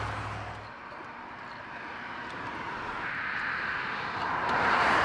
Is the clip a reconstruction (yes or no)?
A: no